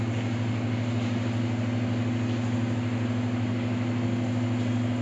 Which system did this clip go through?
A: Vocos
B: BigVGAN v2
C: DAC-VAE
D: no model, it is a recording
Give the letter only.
D